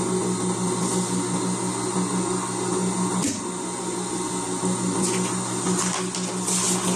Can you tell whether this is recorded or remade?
recorded